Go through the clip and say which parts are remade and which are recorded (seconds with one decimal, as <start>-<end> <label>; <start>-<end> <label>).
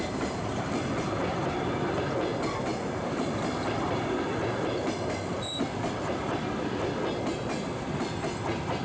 0.0-8.8 recorded